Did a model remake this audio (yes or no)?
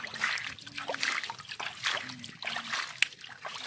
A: no